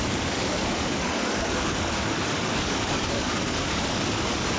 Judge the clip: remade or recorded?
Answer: remade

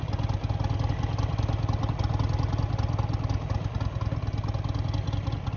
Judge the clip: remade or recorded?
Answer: recorded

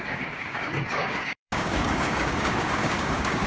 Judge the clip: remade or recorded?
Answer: remade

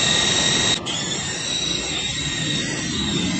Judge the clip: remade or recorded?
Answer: recorded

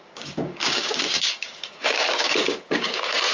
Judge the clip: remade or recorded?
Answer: remade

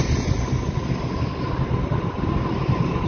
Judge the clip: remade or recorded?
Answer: recorded